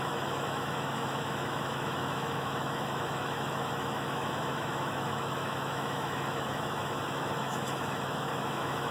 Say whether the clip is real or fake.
fake